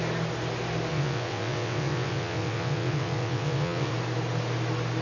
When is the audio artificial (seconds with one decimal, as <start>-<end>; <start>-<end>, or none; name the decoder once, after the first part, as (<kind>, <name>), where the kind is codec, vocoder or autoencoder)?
0.9-3.9 (vocoder, WaveNeXt)